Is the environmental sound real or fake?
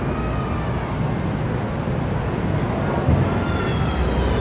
real